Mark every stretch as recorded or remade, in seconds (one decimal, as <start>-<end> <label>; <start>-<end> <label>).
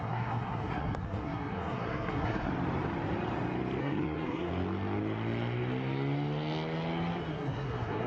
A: 0.0-2.5 remade; 2.5-3.8 recorded; 3.8-4.5 remade; 4.5-7.3 recorded; 7.3-8.1 remade